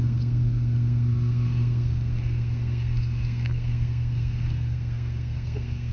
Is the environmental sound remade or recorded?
remade